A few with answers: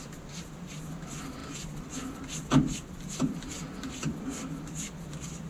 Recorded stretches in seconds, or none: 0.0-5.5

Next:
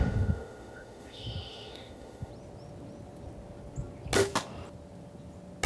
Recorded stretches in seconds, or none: 2.3-5.7